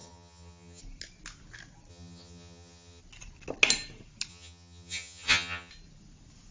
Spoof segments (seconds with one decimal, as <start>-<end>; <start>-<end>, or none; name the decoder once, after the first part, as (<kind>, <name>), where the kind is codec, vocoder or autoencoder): 0.0-0.8 (vocoder, HiFi-GAN); 1.9-3.0; 4.3-5.7